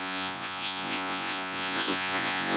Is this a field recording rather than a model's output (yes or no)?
no